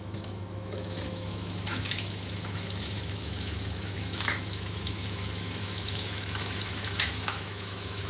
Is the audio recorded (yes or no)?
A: no